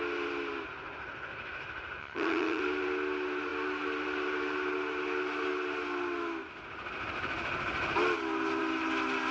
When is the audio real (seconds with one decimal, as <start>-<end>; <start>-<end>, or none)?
0.0-2.0; 2.6-9.3